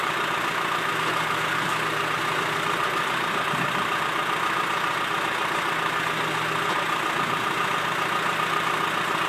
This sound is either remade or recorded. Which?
recorded